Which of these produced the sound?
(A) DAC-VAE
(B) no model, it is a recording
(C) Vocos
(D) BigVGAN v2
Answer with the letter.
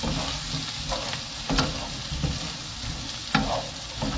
B